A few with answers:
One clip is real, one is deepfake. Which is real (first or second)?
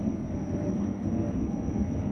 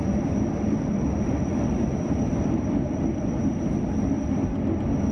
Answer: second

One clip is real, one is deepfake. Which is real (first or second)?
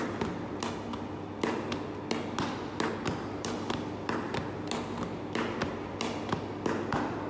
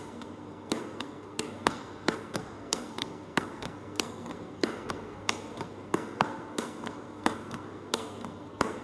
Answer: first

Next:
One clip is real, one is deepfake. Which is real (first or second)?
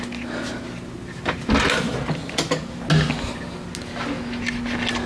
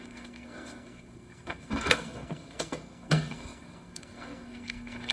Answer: first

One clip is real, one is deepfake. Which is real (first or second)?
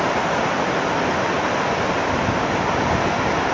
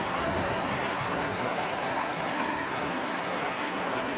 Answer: first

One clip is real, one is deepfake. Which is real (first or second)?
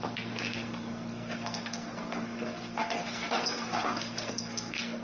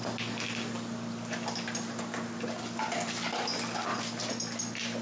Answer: second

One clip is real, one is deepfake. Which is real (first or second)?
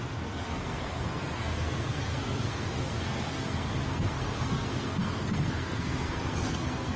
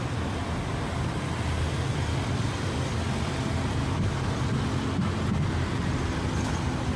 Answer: second